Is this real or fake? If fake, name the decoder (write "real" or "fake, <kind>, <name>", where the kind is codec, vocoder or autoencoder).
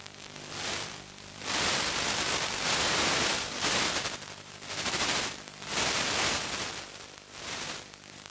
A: fake, vocoder, BigVGAN v2